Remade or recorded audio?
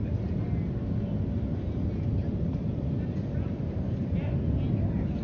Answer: recorded